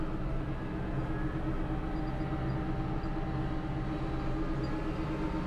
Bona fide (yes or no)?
yes